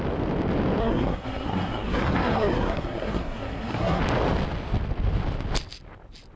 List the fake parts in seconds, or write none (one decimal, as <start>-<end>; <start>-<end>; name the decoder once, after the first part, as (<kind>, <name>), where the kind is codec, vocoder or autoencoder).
0.8-4.0 (codec, SNAC)

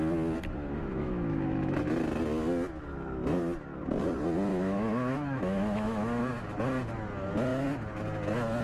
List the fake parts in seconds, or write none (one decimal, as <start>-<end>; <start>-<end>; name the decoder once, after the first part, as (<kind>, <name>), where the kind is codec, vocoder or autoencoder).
0.6-1.8 (autoencoder, DAC-VAE); 4.5-6.2

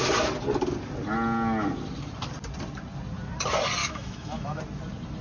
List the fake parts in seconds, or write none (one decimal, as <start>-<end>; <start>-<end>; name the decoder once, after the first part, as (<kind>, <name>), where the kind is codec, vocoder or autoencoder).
3.8-4.6 (autoencoder, DAC-VAE)

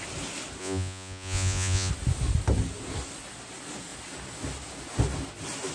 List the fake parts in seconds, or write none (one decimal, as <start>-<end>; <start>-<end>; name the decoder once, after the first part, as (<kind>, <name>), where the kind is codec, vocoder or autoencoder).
0.6-1.9 (vocoder, Vocos)

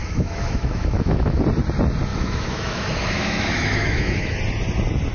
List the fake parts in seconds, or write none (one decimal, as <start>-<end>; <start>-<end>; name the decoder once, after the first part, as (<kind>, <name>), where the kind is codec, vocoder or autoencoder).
0.0-1.4 (autoencoder, DAC-VAE); 2.1-4.4

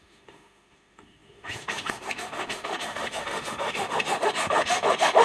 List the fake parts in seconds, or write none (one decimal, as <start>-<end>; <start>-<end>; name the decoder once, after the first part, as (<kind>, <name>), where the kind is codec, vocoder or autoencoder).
0.0-5.2 (autoencoder, DAC-VAE)

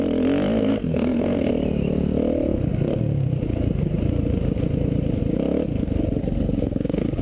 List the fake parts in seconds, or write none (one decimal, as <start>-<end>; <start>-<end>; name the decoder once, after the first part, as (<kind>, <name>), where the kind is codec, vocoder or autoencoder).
0.6-1.5 (codec, SNAC); 6.2-7.2